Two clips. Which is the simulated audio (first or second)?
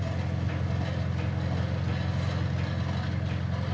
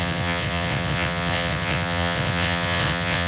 second